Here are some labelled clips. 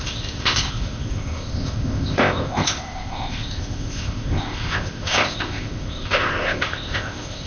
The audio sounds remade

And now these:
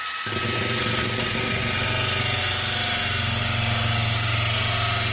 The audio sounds recorded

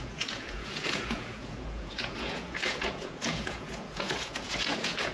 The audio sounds remade